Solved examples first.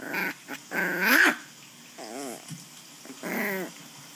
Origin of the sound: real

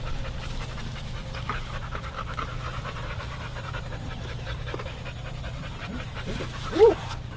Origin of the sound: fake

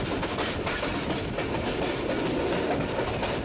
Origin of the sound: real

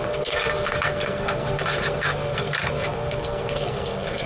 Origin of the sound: fake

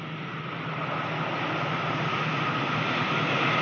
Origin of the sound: real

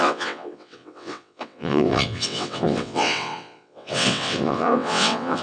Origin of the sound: fake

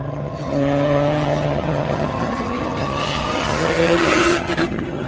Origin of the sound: fake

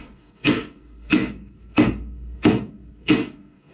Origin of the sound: fake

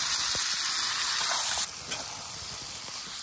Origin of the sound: real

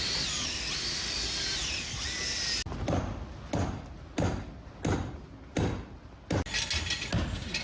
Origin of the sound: real